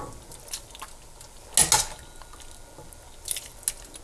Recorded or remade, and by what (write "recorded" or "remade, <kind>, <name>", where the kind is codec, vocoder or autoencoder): recorded